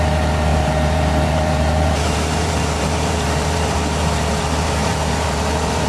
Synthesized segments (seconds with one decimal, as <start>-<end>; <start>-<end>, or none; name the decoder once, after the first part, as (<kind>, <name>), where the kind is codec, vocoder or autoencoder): 0.0-5.9 (vocoder, BigVGAN v2)